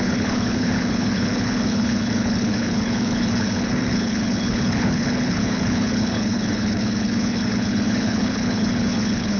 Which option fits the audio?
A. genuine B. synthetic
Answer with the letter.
B